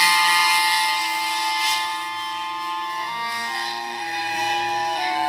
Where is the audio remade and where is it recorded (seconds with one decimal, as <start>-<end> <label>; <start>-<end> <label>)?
0.0-5.3 remade